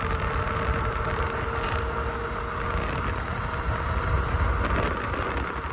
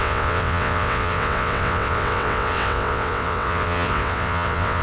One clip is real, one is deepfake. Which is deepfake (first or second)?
second